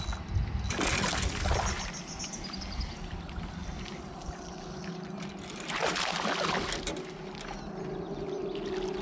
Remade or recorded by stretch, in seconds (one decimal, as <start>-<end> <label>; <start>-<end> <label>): 0.0-9.0 recorded